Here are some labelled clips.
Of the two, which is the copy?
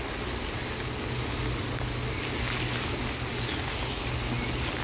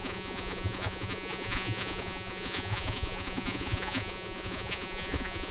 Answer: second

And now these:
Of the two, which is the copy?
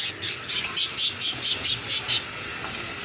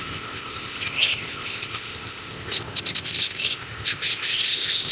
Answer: second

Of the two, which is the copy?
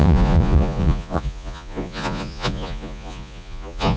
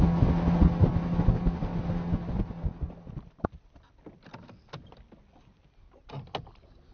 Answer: first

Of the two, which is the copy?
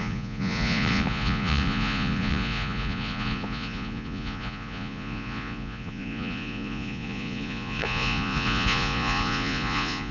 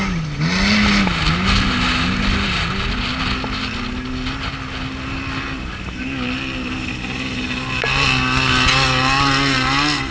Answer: first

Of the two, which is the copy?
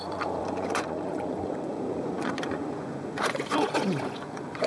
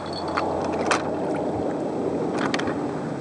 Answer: first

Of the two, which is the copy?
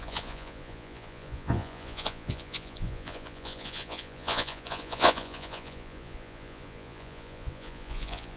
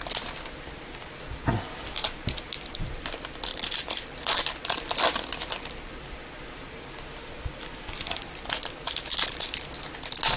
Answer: first